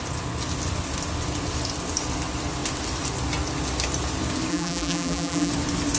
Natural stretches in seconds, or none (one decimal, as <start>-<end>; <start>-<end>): 0.0-4.5; 5.5-6.0